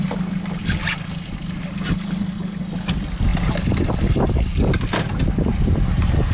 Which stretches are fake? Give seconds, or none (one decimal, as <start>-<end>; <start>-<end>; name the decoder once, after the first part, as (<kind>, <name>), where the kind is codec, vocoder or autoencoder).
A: none